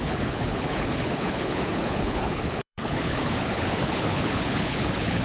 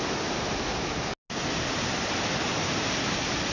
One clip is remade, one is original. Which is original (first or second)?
second